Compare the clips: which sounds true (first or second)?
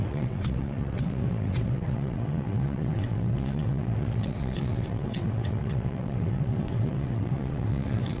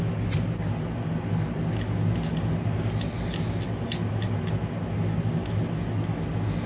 second